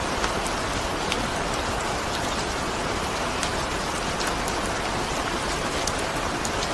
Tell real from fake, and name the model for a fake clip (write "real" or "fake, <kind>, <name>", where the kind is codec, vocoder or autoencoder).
real